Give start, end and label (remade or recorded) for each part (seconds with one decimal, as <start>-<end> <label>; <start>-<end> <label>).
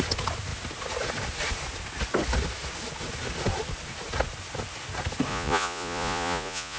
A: 0.0-5.3 recorded; 5.3-6.8 remade